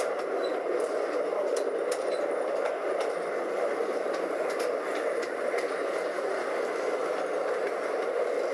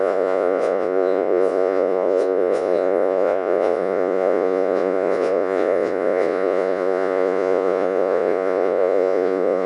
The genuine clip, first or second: first